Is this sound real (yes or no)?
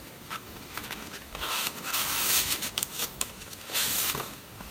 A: no